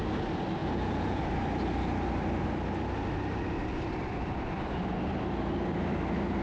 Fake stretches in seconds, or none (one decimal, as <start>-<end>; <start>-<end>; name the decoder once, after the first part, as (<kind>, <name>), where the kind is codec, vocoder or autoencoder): 0.6-1.2 (vocoder, Vocos)